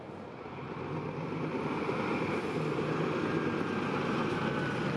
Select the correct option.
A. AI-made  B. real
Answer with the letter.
B